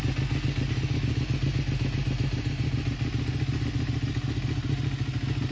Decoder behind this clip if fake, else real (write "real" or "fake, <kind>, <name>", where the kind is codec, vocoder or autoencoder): real